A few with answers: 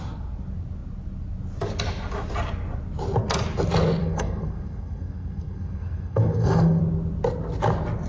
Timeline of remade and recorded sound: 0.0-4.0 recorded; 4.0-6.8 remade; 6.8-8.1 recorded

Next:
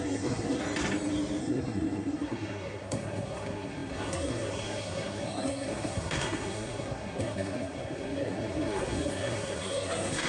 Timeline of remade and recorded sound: 0.0-0.6 remade; 0.6-1.4 recorded; 1.4-10.3 remade

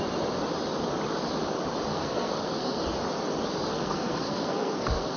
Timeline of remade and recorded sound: 0.0-1.9 recorded; 1.9-2.8 remade; 2.8-3.7 recorded; 3.7-5.2 remade

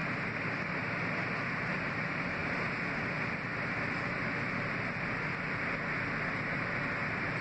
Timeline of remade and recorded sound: 0.0-7.4 recorded

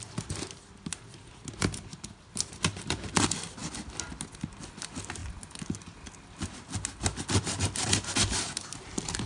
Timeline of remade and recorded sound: 0.0-9.3 recorded

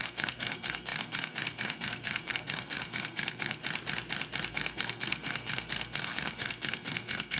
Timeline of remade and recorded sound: 0.0-3.6 remade; 3.6-4.5 recorded; 4.5-7.4 remade

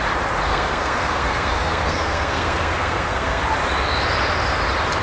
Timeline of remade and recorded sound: 0.0-0.5 recorded; 0.5-3.4 remade; 3.4-5.0 recorded

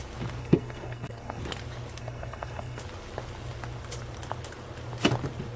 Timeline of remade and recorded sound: 0.0-0.4 recorded; 0.4-1.4 remade; 1.4-2.0 recorded; 2.0-2.8 remade; 2.8-5.6 recorded